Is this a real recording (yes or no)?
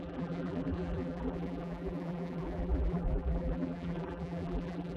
no